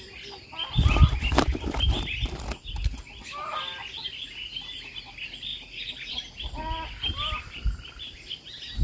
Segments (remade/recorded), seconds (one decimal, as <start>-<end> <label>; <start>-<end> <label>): 0.0-8.8 recorded